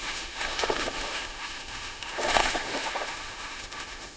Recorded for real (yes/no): no